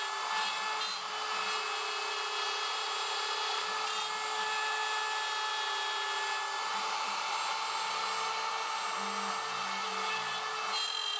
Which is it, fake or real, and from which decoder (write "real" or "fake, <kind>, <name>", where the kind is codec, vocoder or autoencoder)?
real